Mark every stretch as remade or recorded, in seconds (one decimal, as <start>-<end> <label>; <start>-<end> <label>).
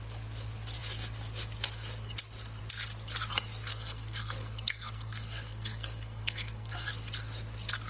0.0-3.7 recorded; 3.7-6.9 remade; 6.9-7.9 recorded